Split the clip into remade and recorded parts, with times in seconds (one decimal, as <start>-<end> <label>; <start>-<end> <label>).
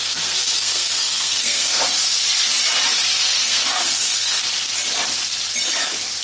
0.0-1.8 remade; 1.8-3.3 recorded; 3.3-4.4 remade; 4.4-6.2 recorded